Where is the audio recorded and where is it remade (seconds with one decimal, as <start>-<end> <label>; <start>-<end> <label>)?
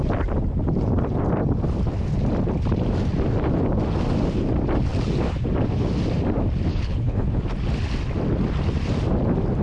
0.0-6.7 recorded; 6.7-7.4 remade; 7.4-9.6 recorded